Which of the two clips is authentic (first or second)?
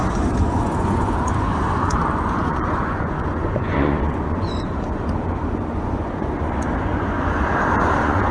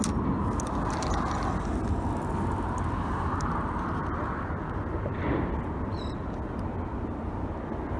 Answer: second